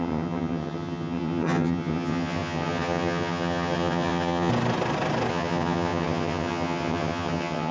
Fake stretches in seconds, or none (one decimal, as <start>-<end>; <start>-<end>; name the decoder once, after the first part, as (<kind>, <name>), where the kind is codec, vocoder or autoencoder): 0.0-4.5 (vocoder, HiFi-GAN); 5.3-7.7